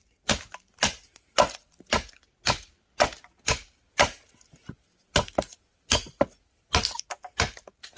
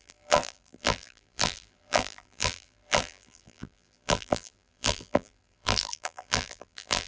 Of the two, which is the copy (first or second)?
second